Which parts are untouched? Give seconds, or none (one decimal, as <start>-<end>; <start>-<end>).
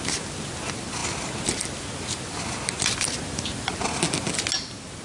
0.0-5.0